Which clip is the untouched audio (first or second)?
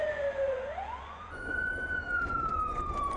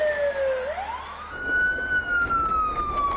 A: second